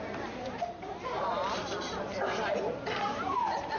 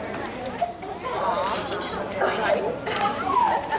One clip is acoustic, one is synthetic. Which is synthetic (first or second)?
second